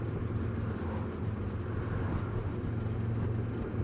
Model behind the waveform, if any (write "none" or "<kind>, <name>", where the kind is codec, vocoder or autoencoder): none